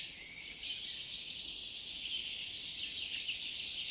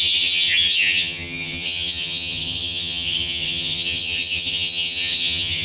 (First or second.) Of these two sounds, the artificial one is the second